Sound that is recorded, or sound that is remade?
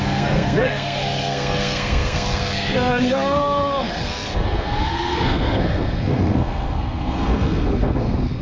remade